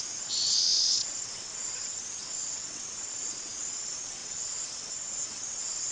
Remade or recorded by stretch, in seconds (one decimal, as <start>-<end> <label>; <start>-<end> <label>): 0.0-5.9 remade